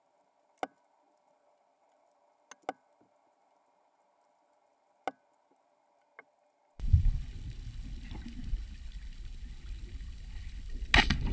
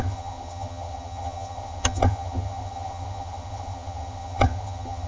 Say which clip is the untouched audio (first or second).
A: first